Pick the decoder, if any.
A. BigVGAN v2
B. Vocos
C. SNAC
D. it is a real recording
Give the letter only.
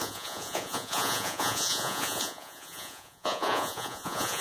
B